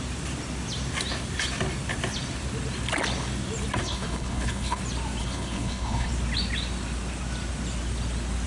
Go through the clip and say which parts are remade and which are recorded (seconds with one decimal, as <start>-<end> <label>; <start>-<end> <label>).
0.0-3.8 recorded; 3.8-4.8 remade; 4.8-5.2 recorded; 5.2-6.1 remade; 6.1-8.5 recorded